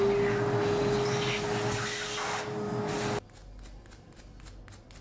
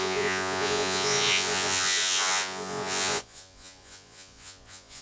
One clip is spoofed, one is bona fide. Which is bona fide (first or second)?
first